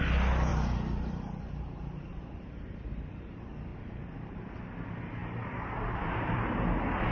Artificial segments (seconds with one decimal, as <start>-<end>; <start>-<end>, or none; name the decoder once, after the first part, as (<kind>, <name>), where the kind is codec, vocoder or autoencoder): 0.5-3.3 (vocoder, BigVGAN v2); 3.7-4.4; 5.2-6.6